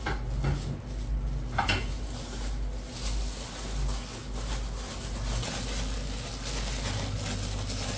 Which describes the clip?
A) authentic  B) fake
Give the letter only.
A